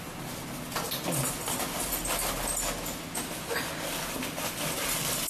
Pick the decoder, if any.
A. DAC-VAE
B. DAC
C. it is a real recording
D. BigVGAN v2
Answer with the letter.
C